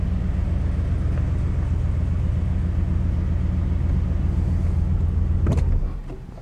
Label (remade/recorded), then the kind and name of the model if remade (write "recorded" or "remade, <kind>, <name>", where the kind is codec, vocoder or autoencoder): recorded